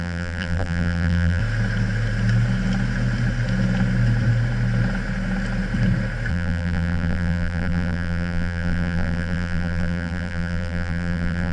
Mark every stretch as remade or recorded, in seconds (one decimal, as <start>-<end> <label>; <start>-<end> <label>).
0.0-1.4 remade; 1.4-6.3 recorded; 6.3-11.5 remade